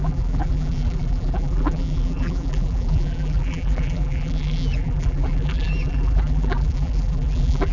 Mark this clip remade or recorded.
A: remade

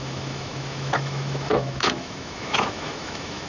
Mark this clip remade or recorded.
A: remade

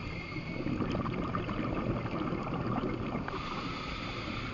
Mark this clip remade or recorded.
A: recorded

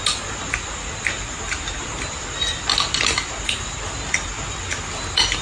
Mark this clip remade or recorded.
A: recorded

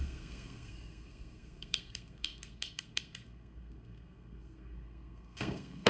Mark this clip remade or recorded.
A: remade